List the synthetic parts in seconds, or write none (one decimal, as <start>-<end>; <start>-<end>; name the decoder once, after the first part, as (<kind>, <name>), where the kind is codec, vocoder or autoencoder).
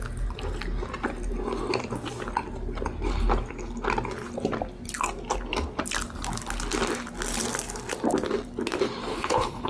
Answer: 9.1-9.7 (codec, HILCodec)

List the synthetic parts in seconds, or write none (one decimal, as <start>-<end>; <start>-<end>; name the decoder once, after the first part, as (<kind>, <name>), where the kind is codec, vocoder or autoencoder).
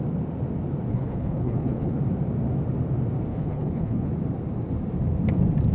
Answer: 0.9-2.0 (codec, HILCodec); 3.3-4.1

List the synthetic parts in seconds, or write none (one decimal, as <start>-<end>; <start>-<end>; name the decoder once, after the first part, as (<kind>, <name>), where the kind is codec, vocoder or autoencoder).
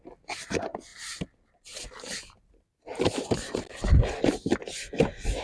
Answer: none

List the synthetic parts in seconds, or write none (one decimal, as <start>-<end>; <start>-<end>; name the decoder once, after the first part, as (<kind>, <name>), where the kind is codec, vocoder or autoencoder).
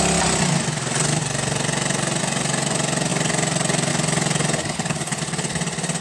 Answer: 4.6-5.2 (codec, HILCodec)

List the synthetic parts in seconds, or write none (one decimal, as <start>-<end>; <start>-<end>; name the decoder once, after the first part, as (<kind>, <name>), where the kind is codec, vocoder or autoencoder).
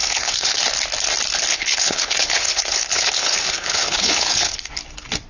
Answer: 0.0-0.6 (codec, HILCodec); 1.5-4.7